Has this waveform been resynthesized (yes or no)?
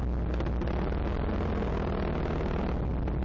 no